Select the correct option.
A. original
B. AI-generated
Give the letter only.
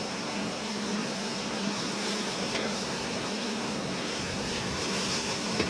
B